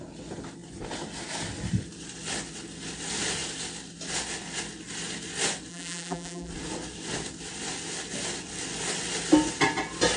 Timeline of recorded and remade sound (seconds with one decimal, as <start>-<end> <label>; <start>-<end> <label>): 0.0-5.7 recorded; 5.7-6.5 remade; 6.5-10.2 recorded